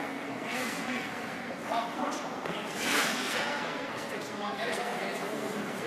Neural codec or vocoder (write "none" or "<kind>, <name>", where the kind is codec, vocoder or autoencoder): codec, SNAC